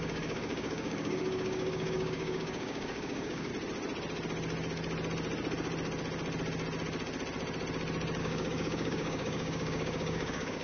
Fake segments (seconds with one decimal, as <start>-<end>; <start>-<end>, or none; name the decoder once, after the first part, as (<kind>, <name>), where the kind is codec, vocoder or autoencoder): 0.0-3.5 (codec, DAC); 8.2-10.6